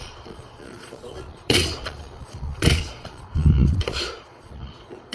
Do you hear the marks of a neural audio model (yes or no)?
yes